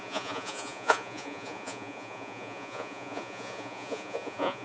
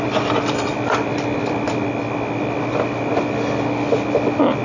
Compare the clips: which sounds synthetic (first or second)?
first